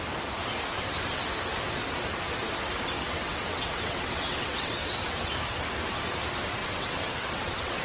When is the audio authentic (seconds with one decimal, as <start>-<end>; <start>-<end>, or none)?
0.0-3.0; 5.3-6.6